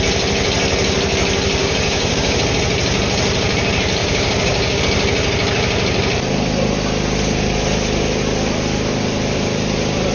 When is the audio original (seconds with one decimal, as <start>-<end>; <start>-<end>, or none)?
0.0-1.6; 2.4-4.0; 4.8-10.1

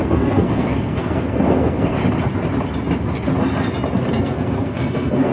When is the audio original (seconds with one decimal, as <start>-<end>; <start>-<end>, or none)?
2.0-4.1